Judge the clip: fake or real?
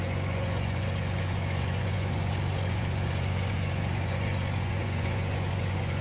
fake